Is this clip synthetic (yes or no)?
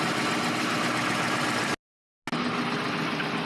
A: no